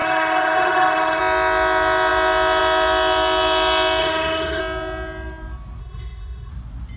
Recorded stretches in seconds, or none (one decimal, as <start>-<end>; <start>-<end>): 1.2-4.0; 4.6-5.8; 6.5-7.0